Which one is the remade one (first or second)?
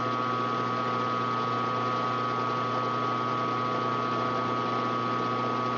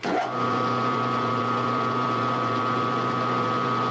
second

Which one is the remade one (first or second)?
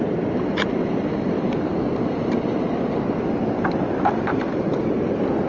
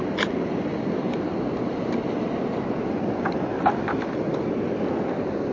first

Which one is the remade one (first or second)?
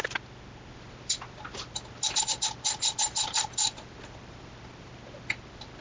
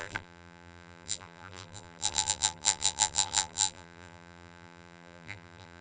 second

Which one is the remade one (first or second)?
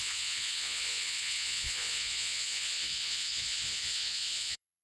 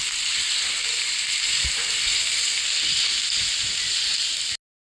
first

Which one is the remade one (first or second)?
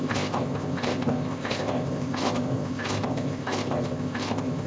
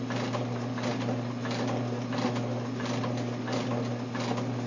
first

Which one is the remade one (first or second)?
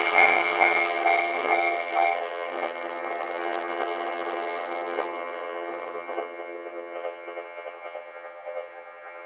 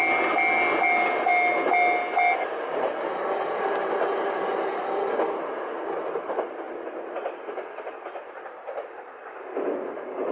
first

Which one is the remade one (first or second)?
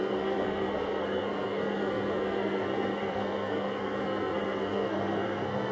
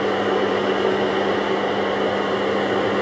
first